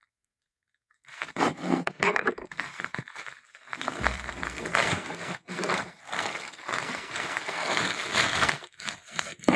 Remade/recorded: remade